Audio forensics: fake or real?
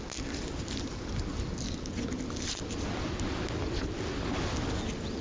real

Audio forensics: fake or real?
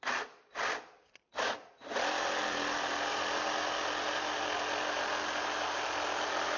real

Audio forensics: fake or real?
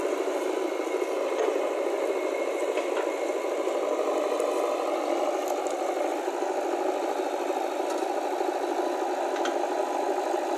real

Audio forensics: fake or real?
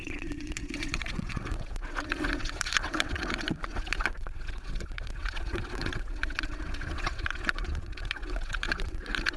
fake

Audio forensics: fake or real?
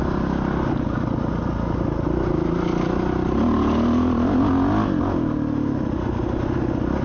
real